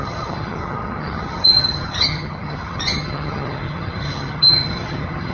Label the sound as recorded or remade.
remade